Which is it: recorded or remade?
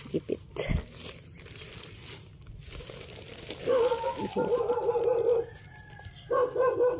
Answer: recorded